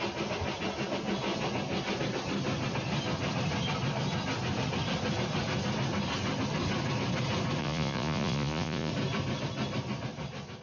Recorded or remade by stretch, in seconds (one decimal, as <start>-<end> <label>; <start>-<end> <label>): 0.0-7.6 recorded; 7.6-8.9 remade; 8.9-10.6 recorded